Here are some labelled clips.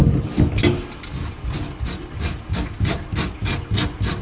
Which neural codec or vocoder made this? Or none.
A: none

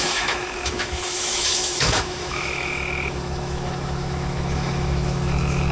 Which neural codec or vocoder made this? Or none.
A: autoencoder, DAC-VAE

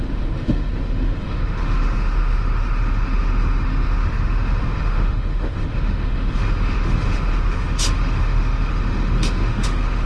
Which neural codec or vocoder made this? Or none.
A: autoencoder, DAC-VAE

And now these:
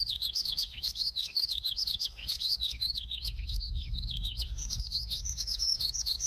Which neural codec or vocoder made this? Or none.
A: autoencoder, DAC-VAE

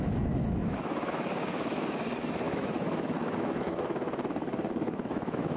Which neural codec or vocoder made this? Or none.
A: autoencoder, DAC-VAE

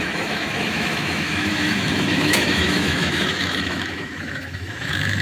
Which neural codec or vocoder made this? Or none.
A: autoencoder, DAC-VAE